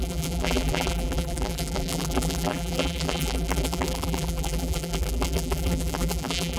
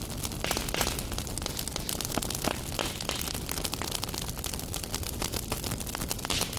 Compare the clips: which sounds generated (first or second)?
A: first